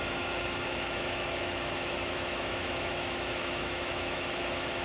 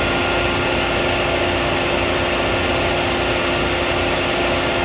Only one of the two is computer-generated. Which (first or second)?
first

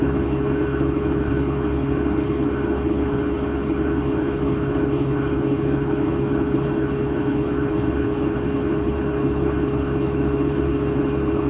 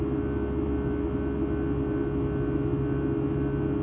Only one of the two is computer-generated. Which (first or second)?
first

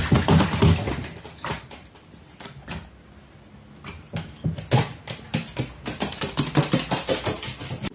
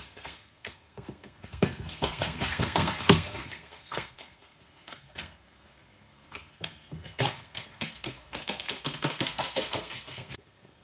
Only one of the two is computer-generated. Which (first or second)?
second